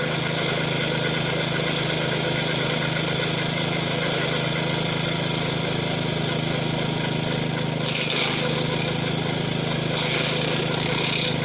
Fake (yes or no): no